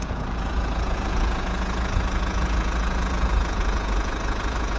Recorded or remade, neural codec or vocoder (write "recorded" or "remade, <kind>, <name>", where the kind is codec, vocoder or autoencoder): remade, vocoder, Vocos